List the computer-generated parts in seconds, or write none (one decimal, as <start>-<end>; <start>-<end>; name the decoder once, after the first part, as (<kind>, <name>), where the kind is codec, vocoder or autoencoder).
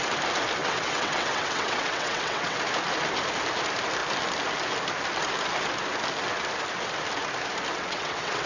0.6-2.6 (vocoder, WaveNeXt); 7.7-8.5